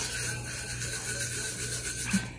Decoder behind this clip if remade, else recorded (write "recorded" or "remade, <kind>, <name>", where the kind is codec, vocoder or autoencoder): recorded